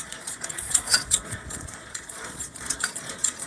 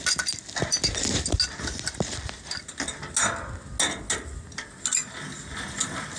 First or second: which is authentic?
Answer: second